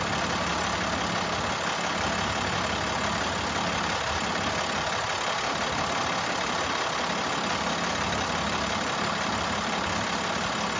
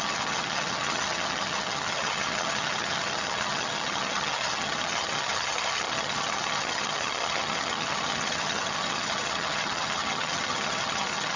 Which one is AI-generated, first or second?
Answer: second